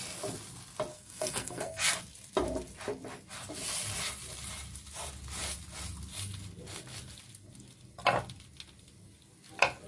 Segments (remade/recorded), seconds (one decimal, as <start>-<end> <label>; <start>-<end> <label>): 0.0-0.9 recorded; 0.9-1.9 remade; 1.9-9.9 recorded